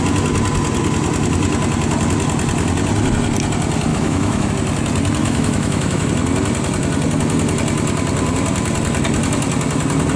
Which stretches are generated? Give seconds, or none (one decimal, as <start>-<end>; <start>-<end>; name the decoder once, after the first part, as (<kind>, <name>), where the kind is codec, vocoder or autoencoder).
3.9-4.5 (autoencoder, DAC-VAE); 5.2-6.1